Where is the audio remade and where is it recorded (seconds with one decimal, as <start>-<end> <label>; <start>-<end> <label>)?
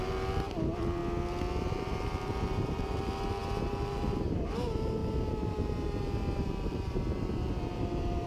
0.0-1.0 remade; 1.0-1.6 recorded; 1.6-8.3 remade